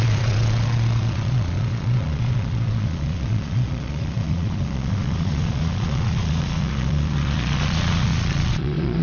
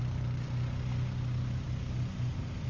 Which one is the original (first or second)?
second